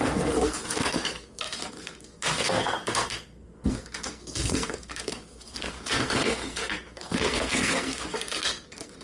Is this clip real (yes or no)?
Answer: no